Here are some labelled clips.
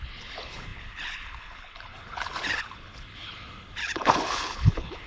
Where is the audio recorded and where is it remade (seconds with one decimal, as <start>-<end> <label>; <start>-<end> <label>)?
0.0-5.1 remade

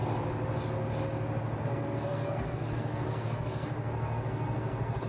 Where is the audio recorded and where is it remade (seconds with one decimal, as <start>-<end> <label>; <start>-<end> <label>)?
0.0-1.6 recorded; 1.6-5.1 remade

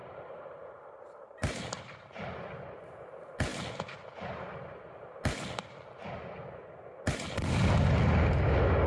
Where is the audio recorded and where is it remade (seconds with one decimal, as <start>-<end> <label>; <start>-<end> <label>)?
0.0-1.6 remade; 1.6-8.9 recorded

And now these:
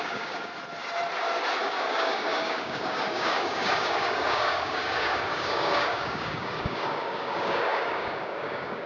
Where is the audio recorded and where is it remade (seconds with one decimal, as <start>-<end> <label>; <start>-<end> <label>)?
0.0-0.5 remade; 0.5-1.6 recorded; 1.6-8.9 remade